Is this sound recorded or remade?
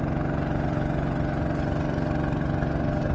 recorded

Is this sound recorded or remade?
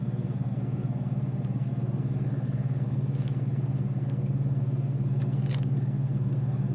remade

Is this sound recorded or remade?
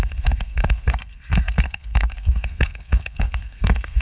remade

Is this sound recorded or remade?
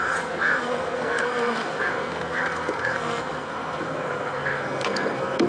remade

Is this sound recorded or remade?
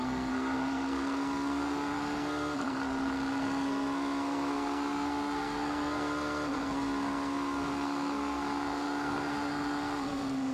remade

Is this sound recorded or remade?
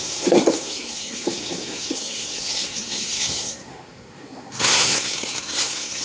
remade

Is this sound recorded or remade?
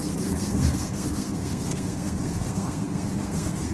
remade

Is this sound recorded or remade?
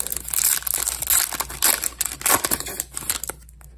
recorded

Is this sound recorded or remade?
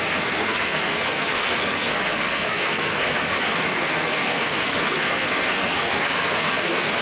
remade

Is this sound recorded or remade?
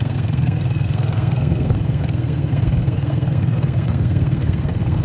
remade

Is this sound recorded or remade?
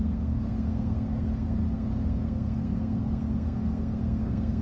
remade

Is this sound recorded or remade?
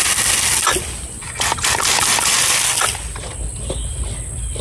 recorded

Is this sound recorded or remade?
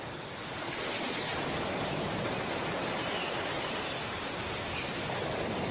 recorded